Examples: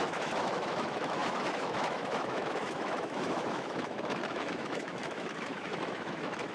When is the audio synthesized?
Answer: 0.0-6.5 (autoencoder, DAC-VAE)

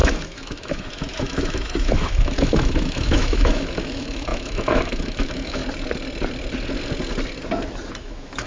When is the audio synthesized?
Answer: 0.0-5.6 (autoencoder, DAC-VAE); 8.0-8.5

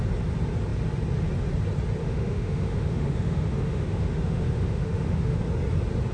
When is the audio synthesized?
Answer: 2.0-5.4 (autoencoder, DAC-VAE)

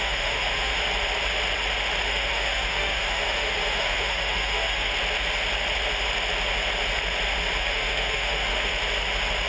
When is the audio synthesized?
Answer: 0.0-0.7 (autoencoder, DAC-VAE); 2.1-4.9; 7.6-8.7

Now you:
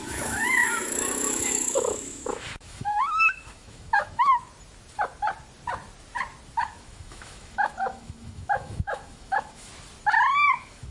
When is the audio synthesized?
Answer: 0.0-4.3 (autoencoder, DAC-VAE); 6.6-9.7; 10.5-10.9

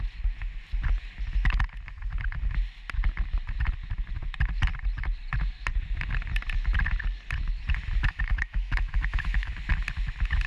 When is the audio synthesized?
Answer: 8.0-9.5 (autoencoder, DAC-VAE)

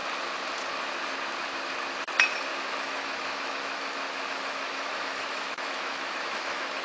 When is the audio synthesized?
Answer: 2.5-6.8 (autoencoder, DAC-VAE)

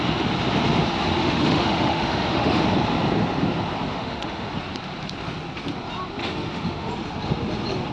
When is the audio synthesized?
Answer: 1.2-2.6 (autoencoder, DAC-VAE); 3.9-4.5; 6.2-6.9